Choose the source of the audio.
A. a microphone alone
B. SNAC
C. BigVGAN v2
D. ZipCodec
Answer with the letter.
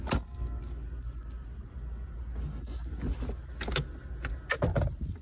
A